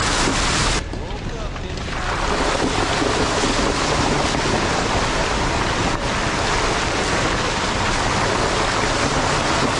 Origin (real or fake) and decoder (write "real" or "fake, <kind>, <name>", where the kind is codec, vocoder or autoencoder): real